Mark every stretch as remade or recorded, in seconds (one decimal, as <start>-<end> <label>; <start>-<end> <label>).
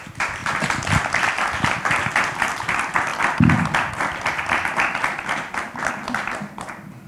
0.0-7.1 recorded